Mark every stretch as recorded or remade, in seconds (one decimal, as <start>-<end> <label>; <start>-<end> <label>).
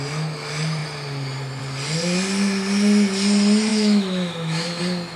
0.0-3.7 recorded; 3.7-4.8 remade; 4.8-5.2 recorded